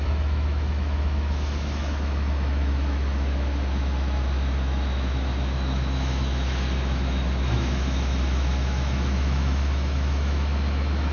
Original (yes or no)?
no